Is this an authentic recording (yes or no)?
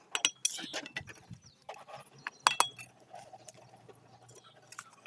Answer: yes